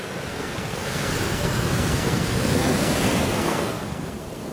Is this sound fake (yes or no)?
yes